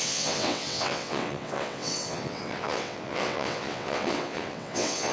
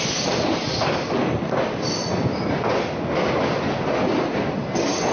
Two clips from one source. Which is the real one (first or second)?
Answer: second